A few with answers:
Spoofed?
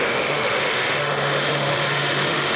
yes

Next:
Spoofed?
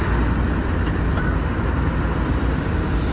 no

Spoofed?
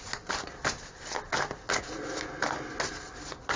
no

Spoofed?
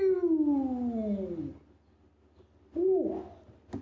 no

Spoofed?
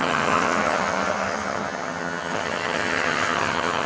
yes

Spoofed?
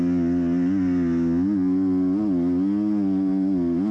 no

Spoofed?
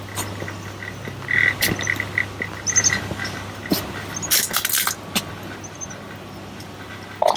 no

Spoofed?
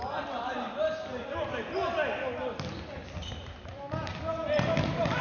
no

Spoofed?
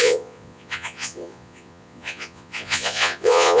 yes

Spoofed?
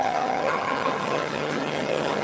yes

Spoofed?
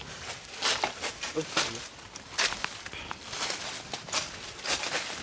no